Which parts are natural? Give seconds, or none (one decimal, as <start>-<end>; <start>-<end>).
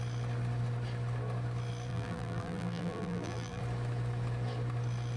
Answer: 0.0-1.9; 3.6-5.2